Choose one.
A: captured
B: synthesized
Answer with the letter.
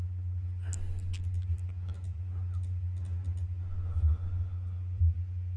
A